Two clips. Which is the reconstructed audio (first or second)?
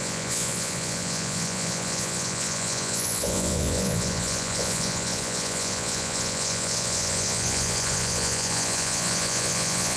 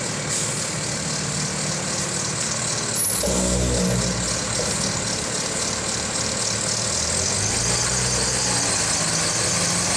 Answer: first